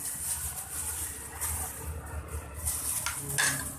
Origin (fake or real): real